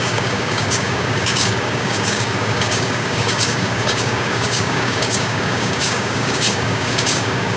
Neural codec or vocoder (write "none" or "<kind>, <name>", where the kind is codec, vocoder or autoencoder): codec, DAC